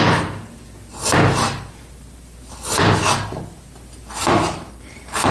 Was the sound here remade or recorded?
recorded